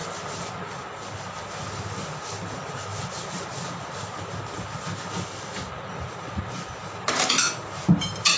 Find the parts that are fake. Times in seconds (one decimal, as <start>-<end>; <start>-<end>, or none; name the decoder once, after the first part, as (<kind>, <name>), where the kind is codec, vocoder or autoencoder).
none